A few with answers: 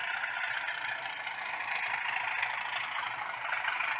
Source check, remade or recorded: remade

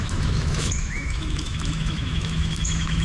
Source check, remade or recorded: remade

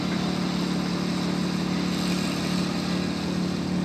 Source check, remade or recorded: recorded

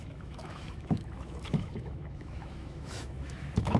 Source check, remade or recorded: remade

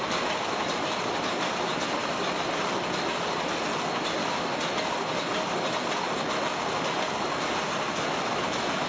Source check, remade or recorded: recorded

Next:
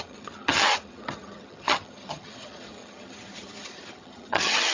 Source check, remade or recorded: remade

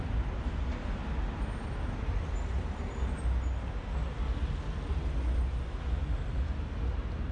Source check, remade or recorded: recorded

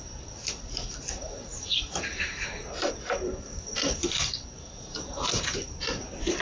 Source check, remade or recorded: remade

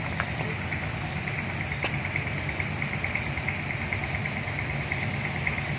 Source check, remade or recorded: recorded